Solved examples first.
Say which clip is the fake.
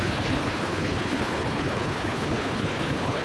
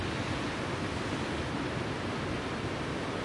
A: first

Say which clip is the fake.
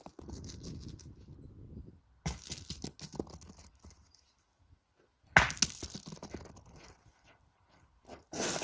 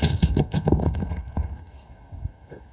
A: second